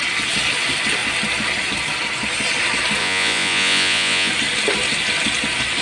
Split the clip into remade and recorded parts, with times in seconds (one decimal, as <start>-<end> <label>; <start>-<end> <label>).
0.0-3.0 recorded; 3.0-4.3 remade; 4.3-5.8 recorded